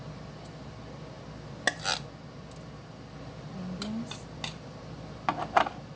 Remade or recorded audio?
recorded